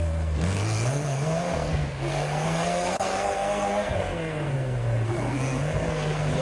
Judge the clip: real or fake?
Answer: fake